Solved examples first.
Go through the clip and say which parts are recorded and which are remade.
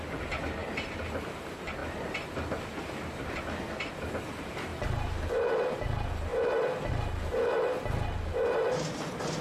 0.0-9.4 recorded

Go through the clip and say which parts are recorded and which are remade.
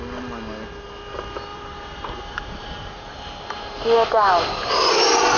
0.0-1.5 recorded; 1.5-4.7 remade; 4.7-5.4 recorded